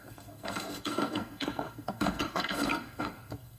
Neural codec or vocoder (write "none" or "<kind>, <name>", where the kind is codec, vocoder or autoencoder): codec, SNAC